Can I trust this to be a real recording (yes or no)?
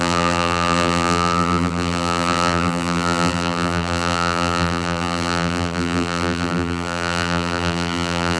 no